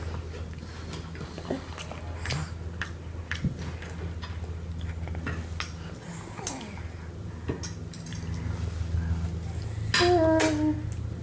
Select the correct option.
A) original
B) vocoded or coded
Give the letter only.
A